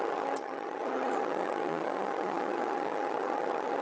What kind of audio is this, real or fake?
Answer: fake